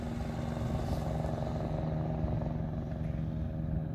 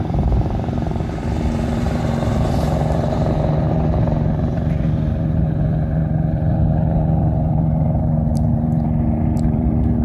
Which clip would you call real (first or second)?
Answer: first